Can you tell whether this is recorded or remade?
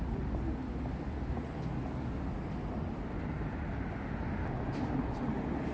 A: recorded